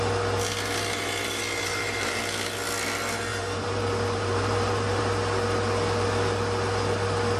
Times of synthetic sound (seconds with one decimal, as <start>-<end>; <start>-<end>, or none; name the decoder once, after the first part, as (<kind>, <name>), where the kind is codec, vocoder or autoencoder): 1.7-2.2 (vocoder, BigVGAN v2); 3.3-5.0